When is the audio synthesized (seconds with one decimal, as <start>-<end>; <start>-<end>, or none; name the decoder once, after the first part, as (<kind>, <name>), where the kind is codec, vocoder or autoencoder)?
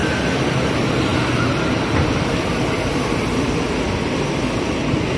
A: none